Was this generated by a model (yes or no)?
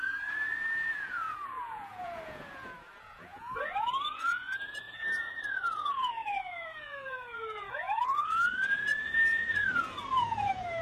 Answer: yes